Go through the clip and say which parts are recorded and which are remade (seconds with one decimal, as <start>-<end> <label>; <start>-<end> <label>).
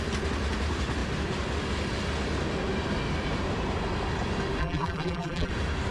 0.0-4.6 recorded; 4.6-5.5 remade; 5.5-5.9 recorded